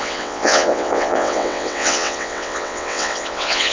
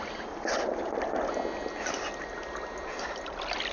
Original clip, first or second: second